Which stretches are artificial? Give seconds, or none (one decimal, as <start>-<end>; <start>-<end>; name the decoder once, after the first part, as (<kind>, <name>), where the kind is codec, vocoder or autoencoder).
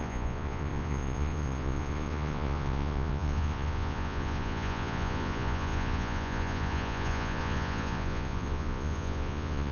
0.0-9.7 (vocoder, Vocos)